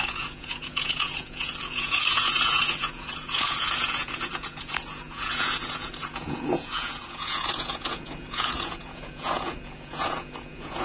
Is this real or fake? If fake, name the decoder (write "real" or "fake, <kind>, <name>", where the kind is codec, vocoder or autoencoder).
fake, vocoder, Vocos